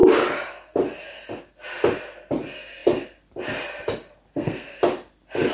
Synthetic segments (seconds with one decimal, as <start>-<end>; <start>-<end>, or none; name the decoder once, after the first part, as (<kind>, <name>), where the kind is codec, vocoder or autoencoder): 4.3-4.8 (codec, SNAC)